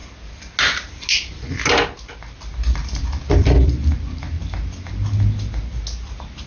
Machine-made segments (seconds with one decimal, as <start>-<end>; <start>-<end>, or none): 2.8-4.4